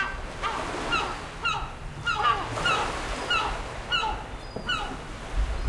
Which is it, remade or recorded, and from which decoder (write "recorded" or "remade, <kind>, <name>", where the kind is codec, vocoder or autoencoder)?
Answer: recorded